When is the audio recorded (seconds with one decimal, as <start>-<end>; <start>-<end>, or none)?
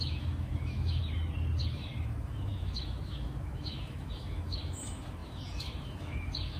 1.0-1.6